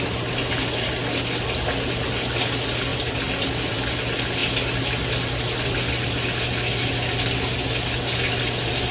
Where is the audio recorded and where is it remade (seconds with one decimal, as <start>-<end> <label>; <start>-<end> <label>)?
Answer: 0.0-8.9 recorded